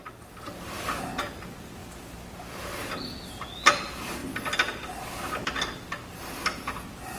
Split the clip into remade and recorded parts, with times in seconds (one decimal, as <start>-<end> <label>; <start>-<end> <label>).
0.0-7.2 recorded